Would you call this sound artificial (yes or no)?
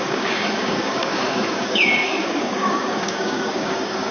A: yes